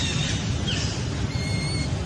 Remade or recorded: recorded